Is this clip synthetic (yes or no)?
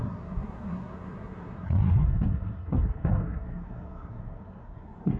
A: yes